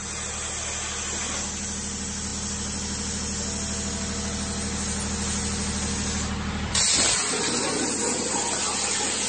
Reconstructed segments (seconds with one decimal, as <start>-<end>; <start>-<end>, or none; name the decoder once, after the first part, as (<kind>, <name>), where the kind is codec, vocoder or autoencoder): none